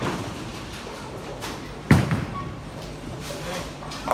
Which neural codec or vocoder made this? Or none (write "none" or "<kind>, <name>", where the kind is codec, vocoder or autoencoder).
vocoder, BigVGAN v2